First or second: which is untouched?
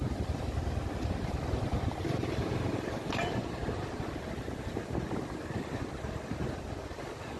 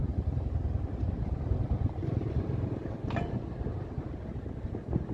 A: second